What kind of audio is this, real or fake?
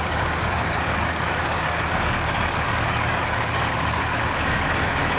fake